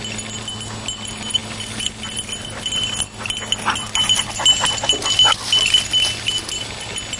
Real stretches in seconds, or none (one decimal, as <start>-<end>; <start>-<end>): 0.0-7.2